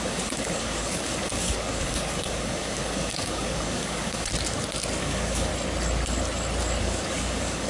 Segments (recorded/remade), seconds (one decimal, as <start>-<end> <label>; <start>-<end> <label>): 0.0-4.3 remade; 4.3-5.0 recorded; 5.0-5.5 remade; 5.5-6.8 recorded; 6.8-7.7 remade